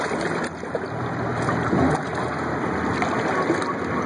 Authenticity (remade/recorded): recorded